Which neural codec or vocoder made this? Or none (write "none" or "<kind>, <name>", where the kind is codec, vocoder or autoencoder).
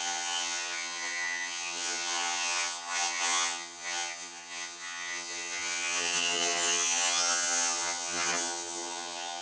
vocoder, HiFi-GAN